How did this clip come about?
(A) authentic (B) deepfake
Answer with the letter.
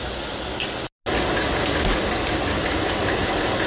A